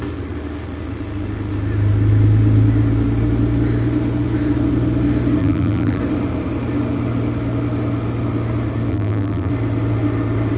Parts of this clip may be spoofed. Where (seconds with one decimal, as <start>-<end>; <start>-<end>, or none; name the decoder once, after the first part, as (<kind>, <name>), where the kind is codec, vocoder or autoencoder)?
5.4-6.0 (vocoder, BigVGAN v2); 8.9-9.5